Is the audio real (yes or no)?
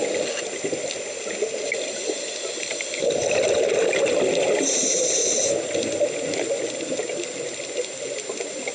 yes